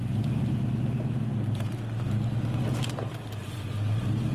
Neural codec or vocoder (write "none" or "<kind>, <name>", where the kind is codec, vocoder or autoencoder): none